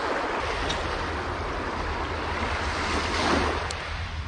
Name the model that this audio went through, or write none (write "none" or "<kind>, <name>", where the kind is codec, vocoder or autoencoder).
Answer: none